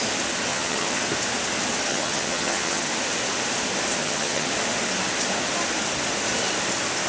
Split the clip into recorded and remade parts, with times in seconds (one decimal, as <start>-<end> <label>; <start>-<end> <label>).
0.0-0.5 recorded; 0.5-1.0 remade; 1.0-1.9 recorded; 1.9-2.9 remade; 2.9-4.0 recorded; 4.0-4.5 remade; 4.5-7.1 recorded